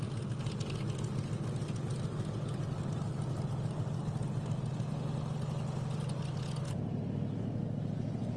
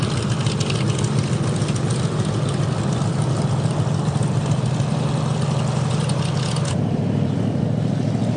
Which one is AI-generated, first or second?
second